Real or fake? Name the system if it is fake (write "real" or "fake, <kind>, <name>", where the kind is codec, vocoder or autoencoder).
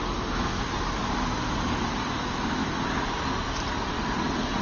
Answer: real